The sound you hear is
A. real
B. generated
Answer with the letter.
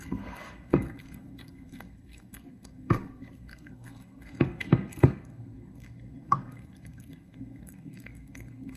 B